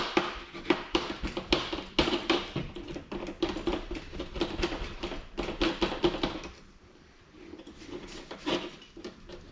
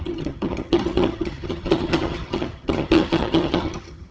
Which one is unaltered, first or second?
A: first